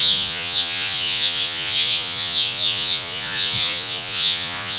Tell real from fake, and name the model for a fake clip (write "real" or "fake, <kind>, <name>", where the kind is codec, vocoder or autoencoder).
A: fake, vocoder, Vocos